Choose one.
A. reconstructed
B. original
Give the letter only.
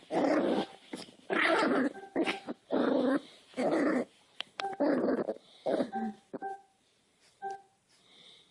A